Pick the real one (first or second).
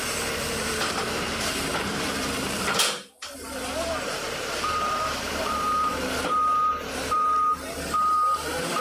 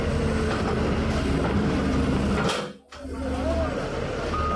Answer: second